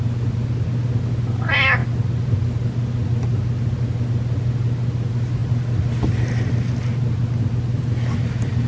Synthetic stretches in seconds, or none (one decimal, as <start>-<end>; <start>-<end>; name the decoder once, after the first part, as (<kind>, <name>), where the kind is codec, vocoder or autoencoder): none